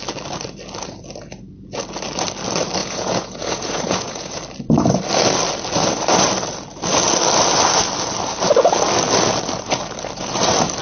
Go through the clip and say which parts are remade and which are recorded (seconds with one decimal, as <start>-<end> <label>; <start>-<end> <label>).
0.0-2.8 recorded; 2.8-4.4 remade; 4.4-10.8 recorded